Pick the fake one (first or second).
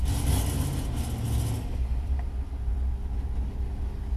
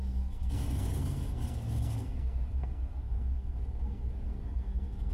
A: second